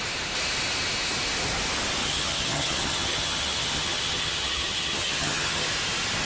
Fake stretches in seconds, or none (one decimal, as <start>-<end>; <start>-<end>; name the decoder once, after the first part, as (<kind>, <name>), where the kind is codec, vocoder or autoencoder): 2.0-5.7 (vocoder, HiFi-GAN)